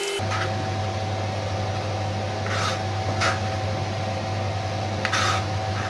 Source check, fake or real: real